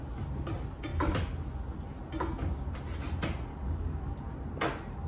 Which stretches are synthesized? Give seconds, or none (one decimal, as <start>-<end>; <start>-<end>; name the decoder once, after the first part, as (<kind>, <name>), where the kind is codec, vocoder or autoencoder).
3.5-4.2 (codec, DAC)